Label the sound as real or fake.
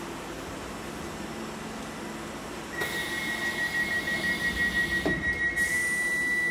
real